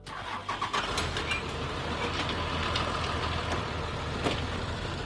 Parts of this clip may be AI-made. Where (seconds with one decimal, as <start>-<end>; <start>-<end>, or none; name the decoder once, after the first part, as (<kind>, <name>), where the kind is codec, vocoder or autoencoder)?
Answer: none